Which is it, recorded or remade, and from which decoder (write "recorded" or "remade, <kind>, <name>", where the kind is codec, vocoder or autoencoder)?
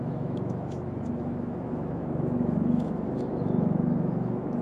remade, autoencoder, DAC-VAE